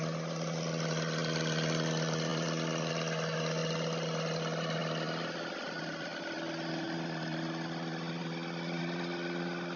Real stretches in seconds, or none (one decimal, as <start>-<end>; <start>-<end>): 0.0-2.3; 2.9-9.8